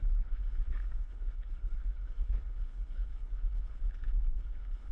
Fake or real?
fake